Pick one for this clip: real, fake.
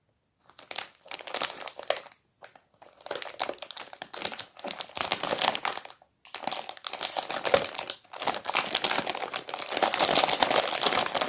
real